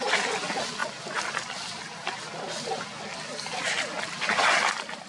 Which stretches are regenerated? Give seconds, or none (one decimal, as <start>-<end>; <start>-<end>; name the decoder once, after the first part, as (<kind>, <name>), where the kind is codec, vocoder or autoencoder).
none